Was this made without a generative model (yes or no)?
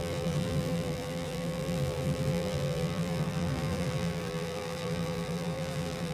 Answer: no